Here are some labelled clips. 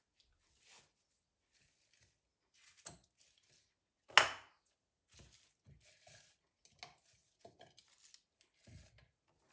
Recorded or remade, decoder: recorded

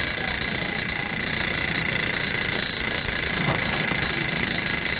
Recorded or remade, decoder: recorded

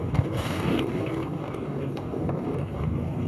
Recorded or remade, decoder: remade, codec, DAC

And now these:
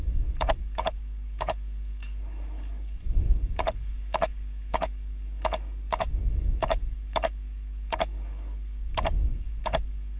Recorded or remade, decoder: remade, codec, DAC